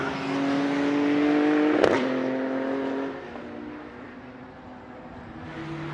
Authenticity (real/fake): real